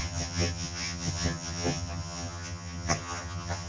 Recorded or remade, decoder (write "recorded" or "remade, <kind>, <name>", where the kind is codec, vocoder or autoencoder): remade, vocoder, HiFi-GAN